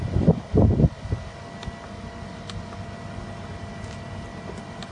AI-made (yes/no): no